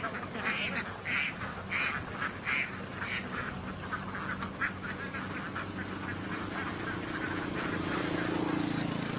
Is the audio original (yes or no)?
yes